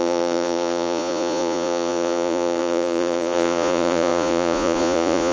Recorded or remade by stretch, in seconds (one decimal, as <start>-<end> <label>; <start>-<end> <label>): 0.0-5.3 remade